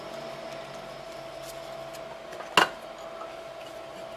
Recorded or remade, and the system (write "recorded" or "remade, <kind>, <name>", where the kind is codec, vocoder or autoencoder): recorded